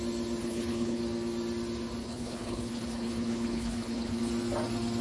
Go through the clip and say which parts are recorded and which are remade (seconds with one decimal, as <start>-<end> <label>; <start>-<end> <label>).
0.0-0.4 recorded; 0.4-1.0 remade; 1.0-2.0 recorded; 2.0-4.2 remade; 4.2-5.0 recorded